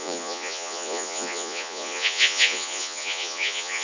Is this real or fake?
fake